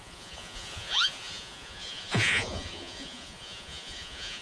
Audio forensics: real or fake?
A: fake